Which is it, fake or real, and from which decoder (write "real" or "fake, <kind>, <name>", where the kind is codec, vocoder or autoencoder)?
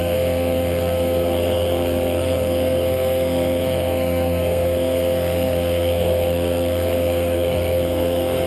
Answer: fake, codec, SNAC